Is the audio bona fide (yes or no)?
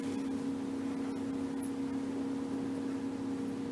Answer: yes